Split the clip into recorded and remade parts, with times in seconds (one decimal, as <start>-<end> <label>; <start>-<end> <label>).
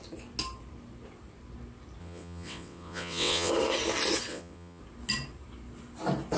0.0-2.0 recorded; 2.0-3.5 remade; 3.5-4.3 recorded; 4.3-4.8 remade; 4.8-6.4 recorded